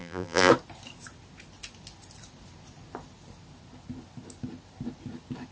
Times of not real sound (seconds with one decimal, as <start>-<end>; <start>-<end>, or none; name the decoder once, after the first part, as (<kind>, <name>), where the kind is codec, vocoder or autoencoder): 0.0-0.5 (vocoder, BigVGAN v2)